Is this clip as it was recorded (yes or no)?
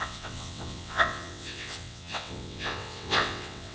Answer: no